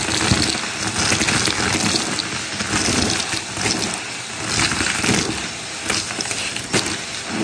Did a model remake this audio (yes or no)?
no